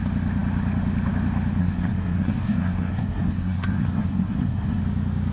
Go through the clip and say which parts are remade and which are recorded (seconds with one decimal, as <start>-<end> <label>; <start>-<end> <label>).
0.0-1.6 recorded; 1.6-4.8 remade; 4.8-5.3 recorded